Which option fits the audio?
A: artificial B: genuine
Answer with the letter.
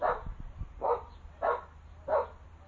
B